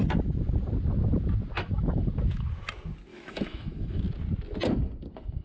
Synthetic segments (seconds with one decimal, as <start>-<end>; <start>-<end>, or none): 3.1-4.0